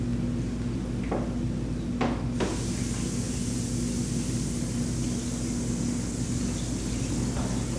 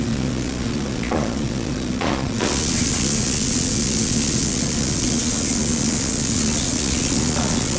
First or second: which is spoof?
second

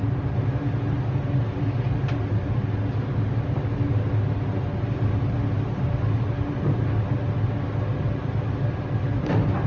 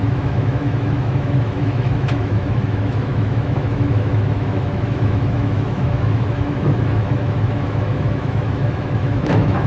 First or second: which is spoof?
second